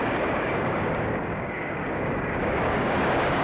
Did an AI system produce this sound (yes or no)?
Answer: yes